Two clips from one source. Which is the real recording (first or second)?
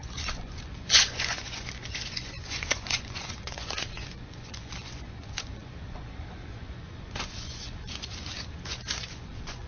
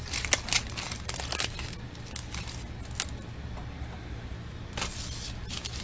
second